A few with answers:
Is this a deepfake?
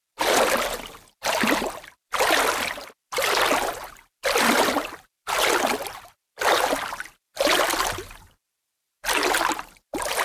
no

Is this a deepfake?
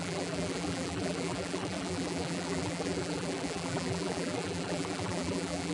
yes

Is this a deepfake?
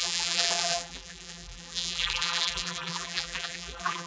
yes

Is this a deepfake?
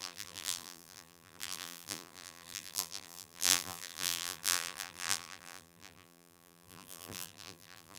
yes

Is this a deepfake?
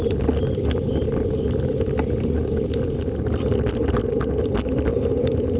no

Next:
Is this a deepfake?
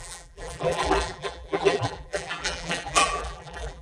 yes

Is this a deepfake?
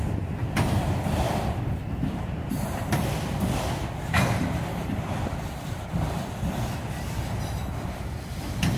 yes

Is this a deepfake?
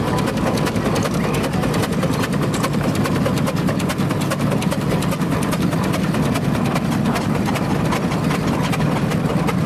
no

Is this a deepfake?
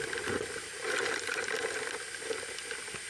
yes